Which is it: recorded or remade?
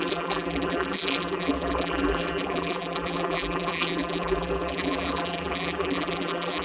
remade